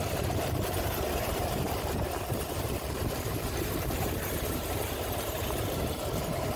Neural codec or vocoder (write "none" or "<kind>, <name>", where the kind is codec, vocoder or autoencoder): vocoder, BigVGAN v2